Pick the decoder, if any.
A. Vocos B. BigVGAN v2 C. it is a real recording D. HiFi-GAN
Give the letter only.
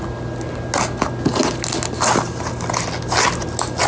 C